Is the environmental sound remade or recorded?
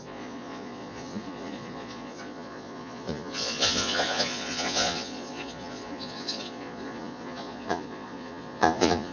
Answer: remade